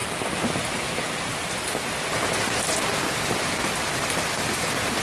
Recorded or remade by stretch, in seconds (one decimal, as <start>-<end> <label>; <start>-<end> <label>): 0.0-3.0 recorded; 3.0-5.0 remade